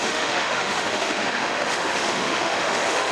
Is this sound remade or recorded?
remade